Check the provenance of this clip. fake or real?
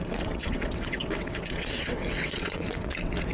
fake